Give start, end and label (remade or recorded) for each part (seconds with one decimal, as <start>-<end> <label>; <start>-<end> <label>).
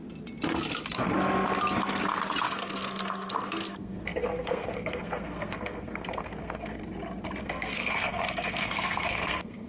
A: 0.0-2.4 recorded; 2.4-6.8 remade; 6.8-7.4 recorded; 7.4-9.7 remade